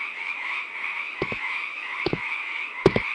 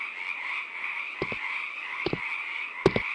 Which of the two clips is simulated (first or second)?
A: first